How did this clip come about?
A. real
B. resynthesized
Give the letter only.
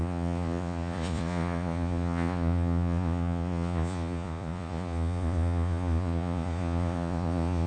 B